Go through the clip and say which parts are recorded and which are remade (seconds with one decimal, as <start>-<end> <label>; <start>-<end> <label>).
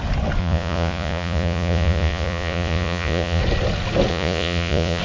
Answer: 0.0-0.4 recorded; 0.4-3.4 remade; 3.4-4.1 recorded; 4.1-5.0 remade